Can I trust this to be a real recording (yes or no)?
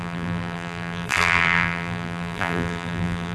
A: no